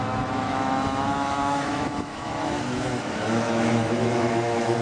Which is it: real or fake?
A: fake